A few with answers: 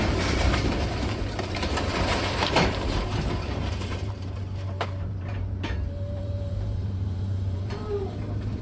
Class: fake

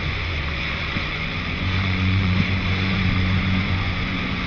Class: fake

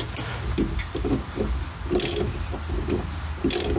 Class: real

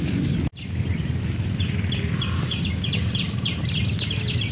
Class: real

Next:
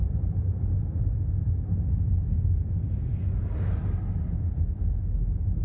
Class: real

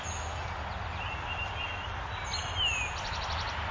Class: real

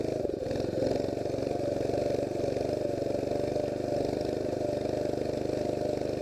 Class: real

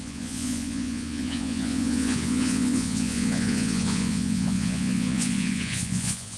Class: fake